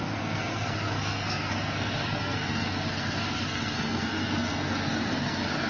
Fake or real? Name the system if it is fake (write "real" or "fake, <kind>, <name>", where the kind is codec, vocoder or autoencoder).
fake, codec, SNAC